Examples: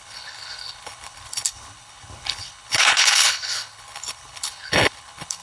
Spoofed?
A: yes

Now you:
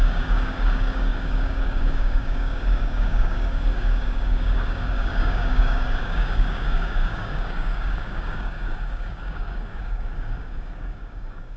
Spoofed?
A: yes